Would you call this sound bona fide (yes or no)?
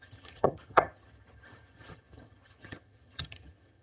no